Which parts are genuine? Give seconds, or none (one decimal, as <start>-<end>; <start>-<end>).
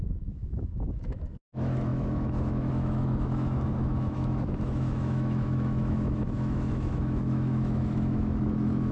none